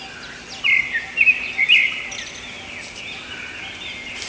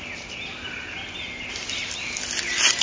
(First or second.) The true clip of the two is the first